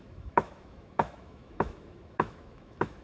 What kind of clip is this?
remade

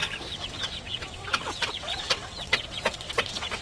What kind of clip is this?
remade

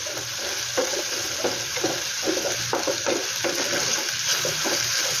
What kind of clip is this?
recorded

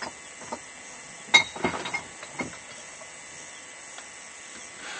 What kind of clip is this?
recorded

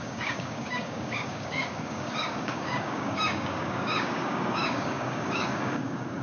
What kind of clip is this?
remade